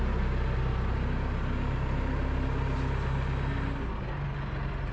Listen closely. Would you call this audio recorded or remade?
recorded